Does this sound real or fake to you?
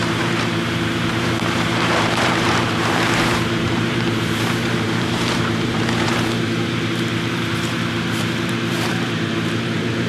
fake